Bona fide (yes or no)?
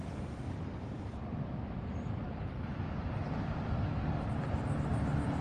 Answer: yes